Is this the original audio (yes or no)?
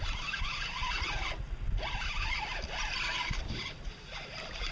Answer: yes